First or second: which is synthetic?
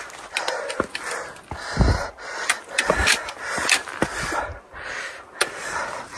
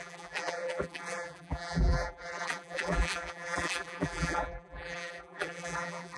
second